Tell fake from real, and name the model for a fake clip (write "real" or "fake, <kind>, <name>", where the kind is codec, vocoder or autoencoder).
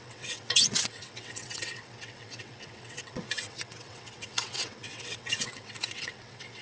fake, vocoder, WaveNeXt